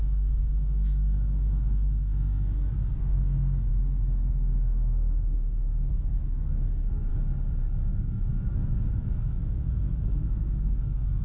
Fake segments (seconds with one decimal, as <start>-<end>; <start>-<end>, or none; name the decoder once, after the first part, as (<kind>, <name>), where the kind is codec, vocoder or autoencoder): 0.0-3.7 (codec, SNAC); 4.3-7.1; 7.9-11.2